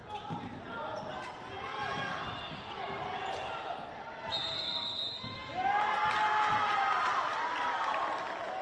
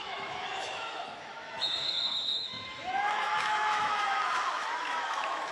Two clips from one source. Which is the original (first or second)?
first